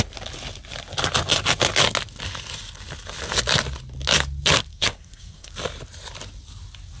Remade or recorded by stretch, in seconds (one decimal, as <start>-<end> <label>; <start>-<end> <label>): 0.0-4.7 recorded; 4.7-5.5 remade; 5.5-7.0 recorded